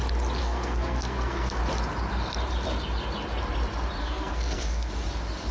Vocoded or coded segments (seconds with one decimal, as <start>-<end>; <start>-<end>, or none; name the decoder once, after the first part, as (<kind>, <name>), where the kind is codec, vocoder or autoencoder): 0.4-1.6 (codec, SNAC); 4.0-4.9